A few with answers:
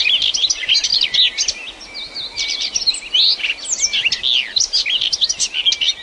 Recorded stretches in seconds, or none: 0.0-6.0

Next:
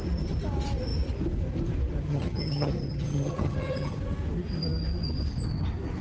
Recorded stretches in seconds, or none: 0.0-2.1; 4.0-6.0

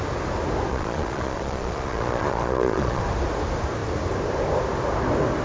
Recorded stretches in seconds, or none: 0.0-0.7; 3.0-5.4

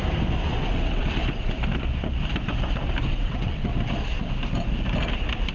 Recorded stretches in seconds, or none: 0.0-0.4; 1.5-3.1; 3.6-5.5

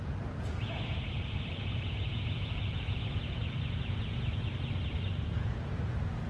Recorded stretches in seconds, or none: 4.4-5.1

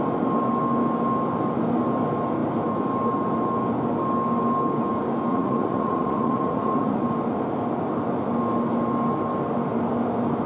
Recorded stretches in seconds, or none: 0.0-5.3; 7.0-10.5

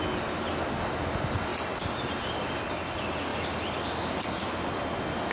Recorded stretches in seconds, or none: 0.0-1.5; 2.1-5.3

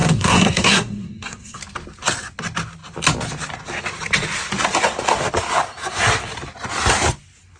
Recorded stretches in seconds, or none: 1.6-7.6